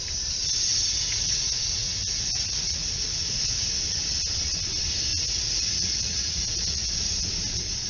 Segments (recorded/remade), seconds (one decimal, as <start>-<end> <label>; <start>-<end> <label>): 0.0-0.7 recorded; 0.7-3.6 remade; 3.6-5.1 recorded; 5.1-6.9 remade; 6.9-7.9 recorded